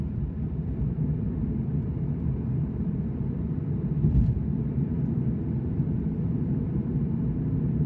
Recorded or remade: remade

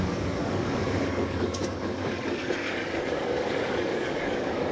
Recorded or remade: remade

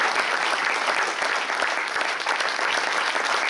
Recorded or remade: recorded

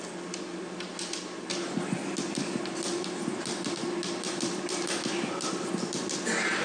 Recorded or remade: recorded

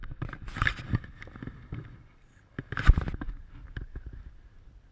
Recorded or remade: recorded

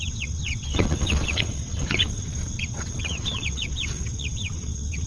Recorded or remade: remade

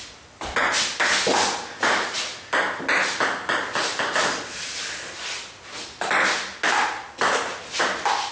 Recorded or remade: recorded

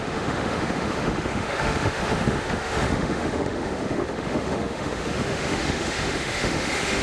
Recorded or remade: remade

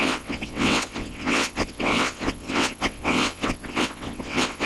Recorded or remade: remade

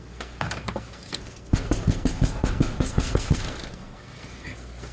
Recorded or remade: remade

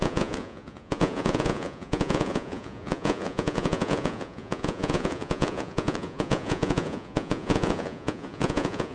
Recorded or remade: remade